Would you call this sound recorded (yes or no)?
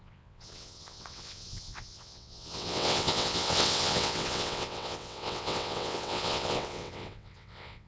no